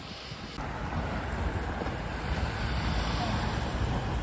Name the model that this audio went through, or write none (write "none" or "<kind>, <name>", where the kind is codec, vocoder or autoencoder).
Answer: none